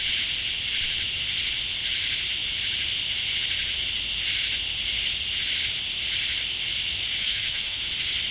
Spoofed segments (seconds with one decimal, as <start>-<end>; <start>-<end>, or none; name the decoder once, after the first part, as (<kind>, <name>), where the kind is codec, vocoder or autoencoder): 7.2-7.8 (autoencoder, DAC-VAE)